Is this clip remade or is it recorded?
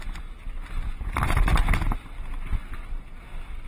recorded